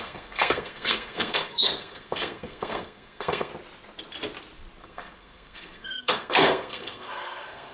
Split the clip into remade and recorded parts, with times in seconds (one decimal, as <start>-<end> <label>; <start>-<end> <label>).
0.0-3.5 remade; 3.5-4.8 recorded; 4.8-7.7 remade

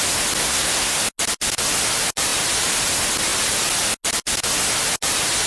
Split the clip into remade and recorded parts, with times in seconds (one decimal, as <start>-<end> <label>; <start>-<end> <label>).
0.0-0.4 recorded; 0.4-1.0 remade; 1.0-5.5 recorded

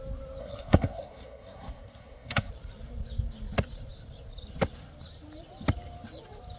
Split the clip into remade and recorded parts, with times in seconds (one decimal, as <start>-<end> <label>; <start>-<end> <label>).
0.0-0.4 recorded; 0.4-2.5 remade; 2.5-6.6 recorded

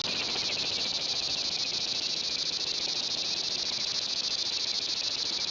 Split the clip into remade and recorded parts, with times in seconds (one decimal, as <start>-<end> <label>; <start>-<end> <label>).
0.0-5.5 recorded

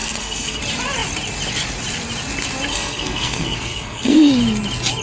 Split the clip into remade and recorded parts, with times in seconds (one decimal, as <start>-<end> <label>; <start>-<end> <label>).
0.0-0.6 remade; 0.6-2.7 recorded; 2.7-4.3 remade; 4.3-5.0 recorded

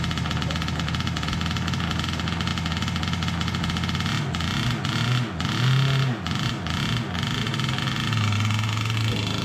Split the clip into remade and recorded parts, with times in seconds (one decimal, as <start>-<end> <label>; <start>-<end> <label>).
0.0-9.4 recorded

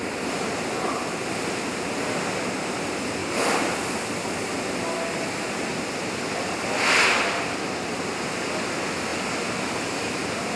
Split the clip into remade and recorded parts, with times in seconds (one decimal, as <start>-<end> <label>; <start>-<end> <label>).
0.0-10.6 recorded